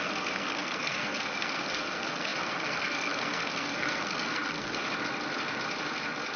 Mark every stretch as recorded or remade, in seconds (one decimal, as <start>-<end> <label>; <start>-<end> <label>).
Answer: 0.0-4.8 remade; 4.8-6.4 recorded